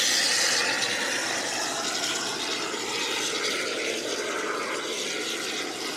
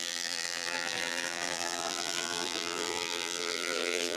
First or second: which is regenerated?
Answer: second